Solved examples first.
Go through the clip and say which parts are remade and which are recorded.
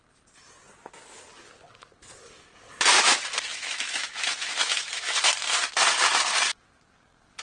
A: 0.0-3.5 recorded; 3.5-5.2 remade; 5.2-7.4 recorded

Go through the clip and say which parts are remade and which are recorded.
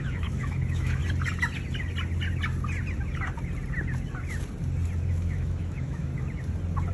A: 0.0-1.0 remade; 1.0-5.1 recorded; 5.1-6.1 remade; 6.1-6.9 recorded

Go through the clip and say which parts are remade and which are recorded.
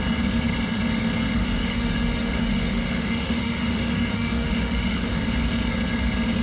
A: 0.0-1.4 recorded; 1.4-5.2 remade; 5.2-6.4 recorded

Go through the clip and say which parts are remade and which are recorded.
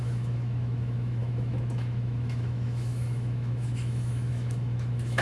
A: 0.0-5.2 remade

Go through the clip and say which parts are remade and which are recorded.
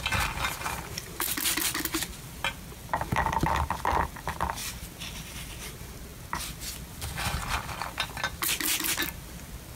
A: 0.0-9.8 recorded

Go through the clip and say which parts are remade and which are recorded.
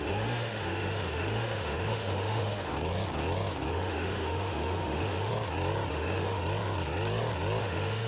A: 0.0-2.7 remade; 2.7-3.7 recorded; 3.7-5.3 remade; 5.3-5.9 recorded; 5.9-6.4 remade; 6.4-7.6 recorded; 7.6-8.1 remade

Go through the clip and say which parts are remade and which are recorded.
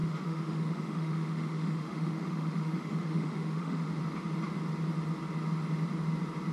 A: 0.0-3.9 remade; 3.9-6.5 recorded